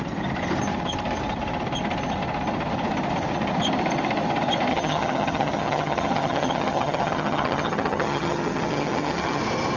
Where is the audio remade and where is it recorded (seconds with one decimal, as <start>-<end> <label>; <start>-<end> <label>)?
0.0-4.7 recorded; 4.7-9.4 remade; 9.4-9.8 recorded